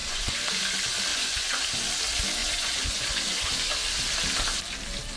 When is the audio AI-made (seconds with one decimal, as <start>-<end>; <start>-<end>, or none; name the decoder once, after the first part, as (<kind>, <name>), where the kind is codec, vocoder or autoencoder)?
0.0-0.6 (vocoder, Vocos); 1.1-1.6; 2.4-3.7